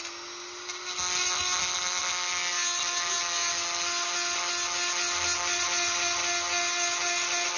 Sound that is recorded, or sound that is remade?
recorded